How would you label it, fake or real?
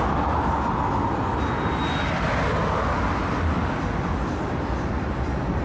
real